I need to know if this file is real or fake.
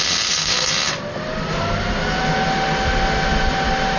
real